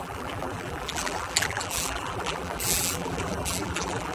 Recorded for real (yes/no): no